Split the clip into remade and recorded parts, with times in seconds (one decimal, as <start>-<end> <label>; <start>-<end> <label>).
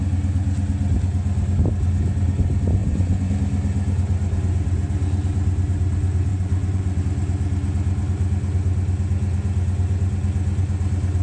0.0-2.8 recorded; 2.8-3.3 remade; 3.3-6.3 recorded; 6.3-7.0 remade; 7.0-11.2 recorded